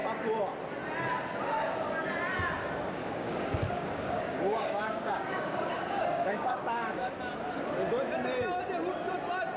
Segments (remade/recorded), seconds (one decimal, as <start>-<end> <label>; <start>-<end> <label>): 0.0-3.0 recorded; 3.0-7.1 remade; 7.1-9.6 recorded